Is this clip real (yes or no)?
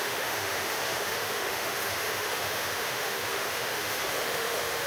no